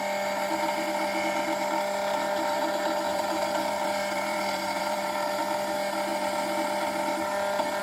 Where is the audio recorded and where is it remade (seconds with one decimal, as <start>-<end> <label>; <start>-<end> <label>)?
0.0-3.1 recorded; 3.1-5.4 remade; 5.4-7.8 recorded